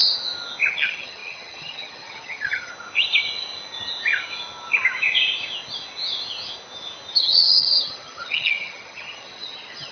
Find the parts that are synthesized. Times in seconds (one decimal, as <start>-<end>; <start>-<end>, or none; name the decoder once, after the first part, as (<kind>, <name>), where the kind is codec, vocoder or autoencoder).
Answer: 0.7-2.7 (vocoder, HiFi-GAN); 7.1-9.9